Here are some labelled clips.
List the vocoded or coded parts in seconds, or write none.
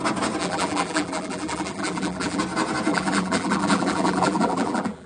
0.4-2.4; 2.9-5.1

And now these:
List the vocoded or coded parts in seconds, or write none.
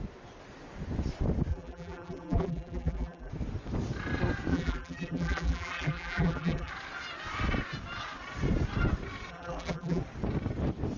1.5-3.3; 4.5-6.7; 9.3-10.0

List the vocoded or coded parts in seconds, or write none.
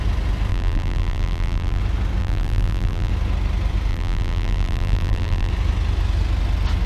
0.5-1.8; 2.2-3.1; 3.9-5.5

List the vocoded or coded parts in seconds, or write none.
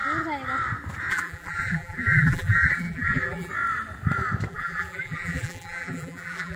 1.1-3.5; 4.5-6.6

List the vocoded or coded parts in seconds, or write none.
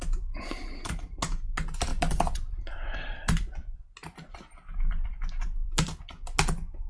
1.9-6.0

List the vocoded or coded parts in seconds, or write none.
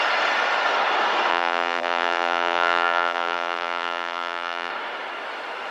1.3-4.7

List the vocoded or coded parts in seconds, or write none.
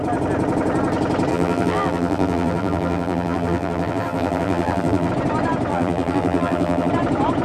1.3-5.1; 5.7-6.9